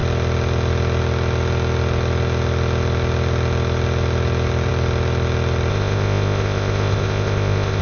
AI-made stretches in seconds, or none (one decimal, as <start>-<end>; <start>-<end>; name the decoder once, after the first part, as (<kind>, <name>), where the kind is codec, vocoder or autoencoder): 5.7-7.8 (codec, ZipCodec)